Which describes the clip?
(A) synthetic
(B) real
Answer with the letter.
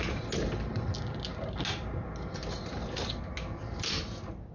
B